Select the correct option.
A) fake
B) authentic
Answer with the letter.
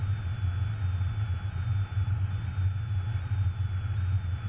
B